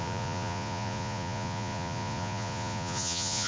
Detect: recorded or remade remade